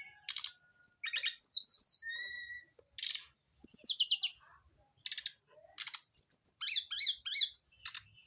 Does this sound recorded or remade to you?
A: recorded